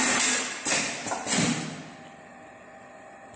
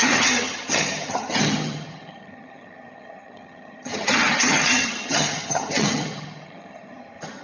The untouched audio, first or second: first